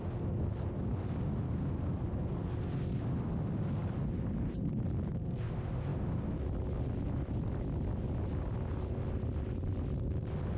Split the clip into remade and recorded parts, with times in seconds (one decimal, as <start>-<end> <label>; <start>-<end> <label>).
0.0-10.6 recorded